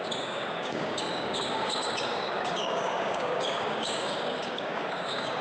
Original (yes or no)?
no